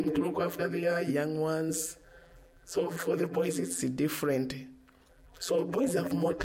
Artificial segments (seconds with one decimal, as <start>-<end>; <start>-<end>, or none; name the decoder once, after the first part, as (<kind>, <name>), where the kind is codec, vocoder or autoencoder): 0.0-1.1 (vocoder, BigVGAN v2); 1.7-3.8; 5.1-6.4